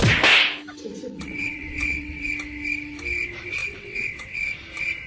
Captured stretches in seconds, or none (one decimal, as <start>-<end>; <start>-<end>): 0.0-0.9; 2.3-3.6; 4.4-5.1